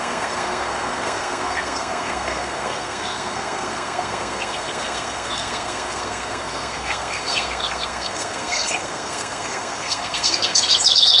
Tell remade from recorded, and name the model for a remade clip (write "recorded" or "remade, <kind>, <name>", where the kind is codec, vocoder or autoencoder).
remade, codec, SNAC